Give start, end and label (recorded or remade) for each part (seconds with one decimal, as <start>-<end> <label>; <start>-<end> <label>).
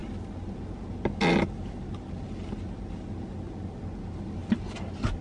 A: 0.0-5.2 recorded